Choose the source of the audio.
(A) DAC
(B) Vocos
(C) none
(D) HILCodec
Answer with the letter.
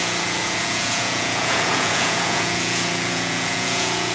B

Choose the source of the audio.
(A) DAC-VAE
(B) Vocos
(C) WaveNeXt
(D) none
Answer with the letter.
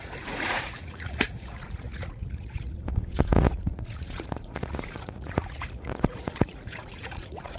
B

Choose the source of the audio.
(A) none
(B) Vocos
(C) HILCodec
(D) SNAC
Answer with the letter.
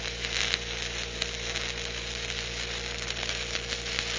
A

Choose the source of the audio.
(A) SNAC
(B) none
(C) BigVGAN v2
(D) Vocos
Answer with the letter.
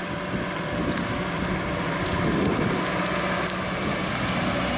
B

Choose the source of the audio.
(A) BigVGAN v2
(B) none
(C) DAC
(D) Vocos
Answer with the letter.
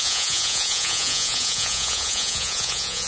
D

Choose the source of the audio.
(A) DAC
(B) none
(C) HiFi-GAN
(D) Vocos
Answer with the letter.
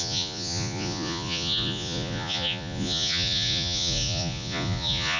D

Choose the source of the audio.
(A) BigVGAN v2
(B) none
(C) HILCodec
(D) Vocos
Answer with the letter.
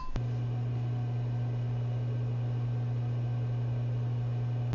B